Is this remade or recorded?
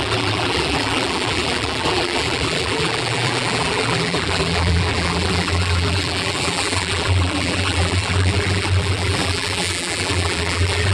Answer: remade